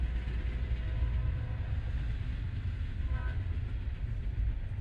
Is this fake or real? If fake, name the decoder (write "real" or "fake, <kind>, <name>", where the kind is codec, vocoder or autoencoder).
real